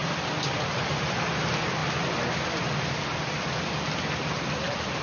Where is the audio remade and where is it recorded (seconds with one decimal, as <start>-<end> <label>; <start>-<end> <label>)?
0.0-5.0 recorded